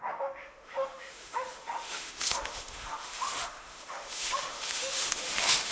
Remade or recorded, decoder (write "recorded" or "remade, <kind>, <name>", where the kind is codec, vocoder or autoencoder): remade, autoencoder, DAC-VAE